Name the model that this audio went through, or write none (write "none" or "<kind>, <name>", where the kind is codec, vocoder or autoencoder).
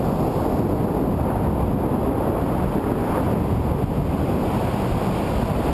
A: none